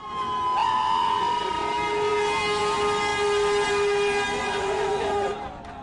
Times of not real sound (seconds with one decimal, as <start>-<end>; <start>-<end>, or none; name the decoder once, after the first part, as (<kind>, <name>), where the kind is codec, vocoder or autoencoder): 0.6-1.2 (vocoder, Vocos); 4.4-5.3

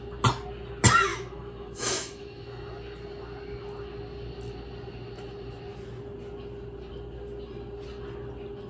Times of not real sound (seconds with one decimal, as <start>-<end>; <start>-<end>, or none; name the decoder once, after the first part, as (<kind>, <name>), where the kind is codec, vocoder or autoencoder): 1.1-2.7 (autoencoder, DAC-VAE)